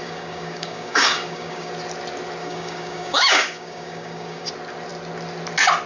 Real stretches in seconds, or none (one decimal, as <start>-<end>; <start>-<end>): 1.7-2.4; 4.5-5.9